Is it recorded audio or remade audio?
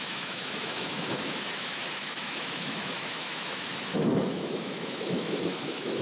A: remade